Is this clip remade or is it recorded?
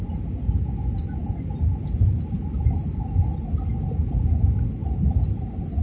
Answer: recorded